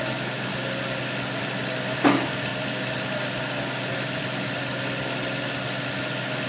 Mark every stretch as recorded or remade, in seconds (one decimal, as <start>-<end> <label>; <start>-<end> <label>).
0.0-6.5 recorded